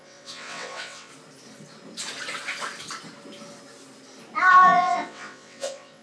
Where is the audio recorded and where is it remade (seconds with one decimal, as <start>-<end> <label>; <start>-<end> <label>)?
0.0-1.1 remade; 1.1-4.5 recorded; 4.5-6.0 remade

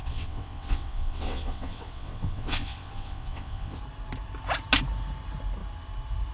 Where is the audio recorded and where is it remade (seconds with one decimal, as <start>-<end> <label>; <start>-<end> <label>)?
0.0-3.8 remade; 3.8-6.3 recorded

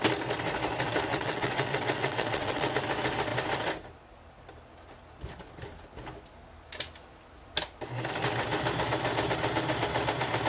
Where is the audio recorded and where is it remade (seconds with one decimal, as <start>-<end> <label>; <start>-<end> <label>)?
0.0-1.1 recorded; 1.1-2.7 remade; 2.7-10.5 recorded

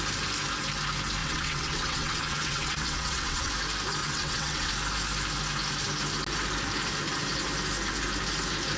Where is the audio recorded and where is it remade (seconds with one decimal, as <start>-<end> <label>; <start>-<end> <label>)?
0.0-1.2 recorded; 1.2-3.5 remade; 3.5-4.0 recorded; 4.0-4.7 remade; 4.7-8.8 recorded

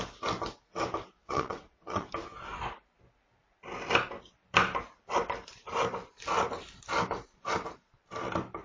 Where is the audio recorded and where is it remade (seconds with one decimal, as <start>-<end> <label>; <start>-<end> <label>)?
0.0-1.2 recorded; 1.2-2.1 remade; 2.1-8.6 recorded